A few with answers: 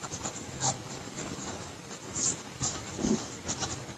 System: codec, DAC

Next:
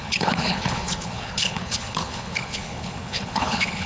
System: codec, HILCodec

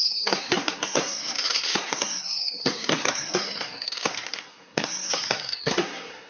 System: codec, SNAC